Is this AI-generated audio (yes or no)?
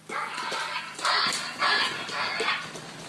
no